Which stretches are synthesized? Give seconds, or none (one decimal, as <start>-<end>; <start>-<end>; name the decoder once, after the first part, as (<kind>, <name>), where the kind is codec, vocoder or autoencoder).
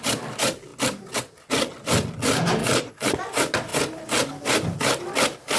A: 2.6-3.1 (vocoder, Vocos)